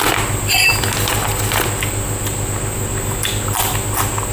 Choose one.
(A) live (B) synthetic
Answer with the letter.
A